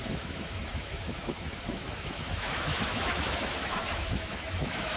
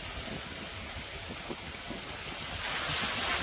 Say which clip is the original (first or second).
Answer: second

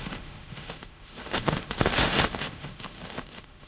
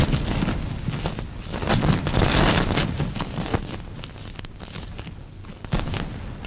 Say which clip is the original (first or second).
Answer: second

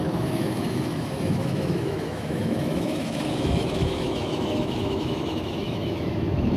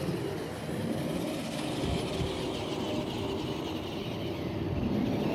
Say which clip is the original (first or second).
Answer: second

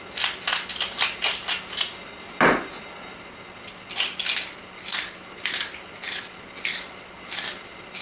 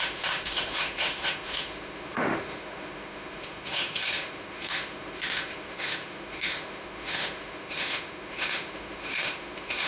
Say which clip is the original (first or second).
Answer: first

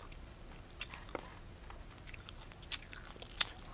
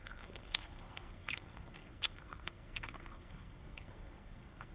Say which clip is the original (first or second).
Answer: first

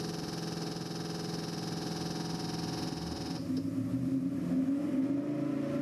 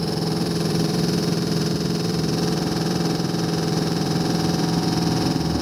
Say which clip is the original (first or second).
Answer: first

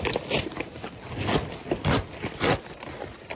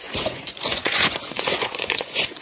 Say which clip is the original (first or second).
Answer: first